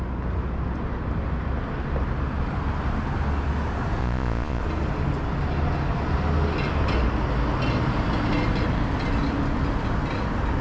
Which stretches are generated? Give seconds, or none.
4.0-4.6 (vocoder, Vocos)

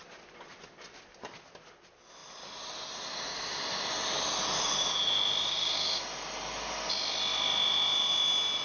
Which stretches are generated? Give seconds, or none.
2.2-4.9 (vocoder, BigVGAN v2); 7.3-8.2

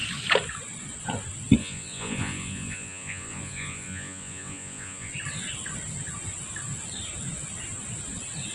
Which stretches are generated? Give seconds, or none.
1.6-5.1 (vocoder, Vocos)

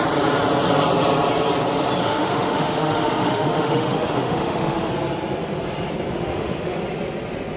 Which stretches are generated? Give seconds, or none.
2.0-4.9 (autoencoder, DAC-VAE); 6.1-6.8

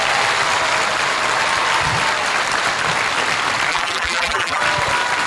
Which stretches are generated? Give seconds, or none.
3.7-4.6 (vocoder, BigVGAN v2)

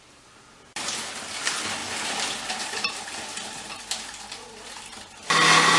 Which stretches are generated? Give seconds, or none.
none

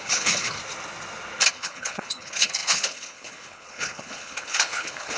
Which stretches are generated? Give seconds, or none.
0.0-0.6 (codec, HILCodec); 1.5-5.2

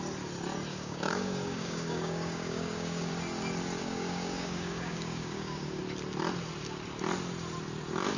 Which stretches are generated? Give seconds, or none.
0.7-3.1 (codec, DAC); 3.8-5.8